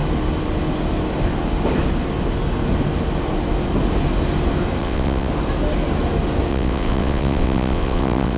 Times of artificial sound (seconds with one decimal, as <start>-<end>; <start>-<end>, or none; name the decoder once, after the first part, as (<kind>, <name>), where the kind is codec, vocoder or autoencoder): 4.8-5.3 (vocoder, WaveNeXt); 6.5-8.4